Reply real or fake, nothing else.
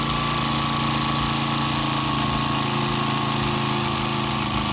real